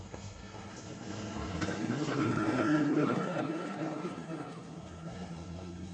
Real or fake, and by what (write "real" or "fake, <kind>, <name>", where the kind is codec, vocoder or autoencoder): fake, codec, SNAC